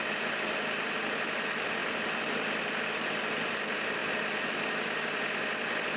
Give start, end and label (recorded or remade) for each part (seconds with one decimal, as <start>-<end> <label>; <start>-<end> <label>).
0.0-6.0 recorded